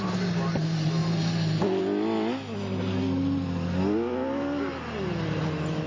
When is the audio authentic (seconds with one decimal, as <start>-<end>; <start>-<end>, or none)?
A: 0.0-5.9